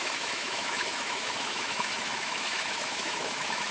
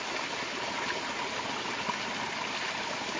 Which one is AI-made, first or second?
first